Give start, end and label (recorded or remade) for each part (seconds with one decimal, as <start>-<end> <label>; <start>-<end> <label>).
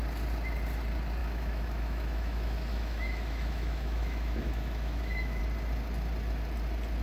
0.0-1.2 recorded; 1.2-5.4 remade; 5.4-7.0 recorded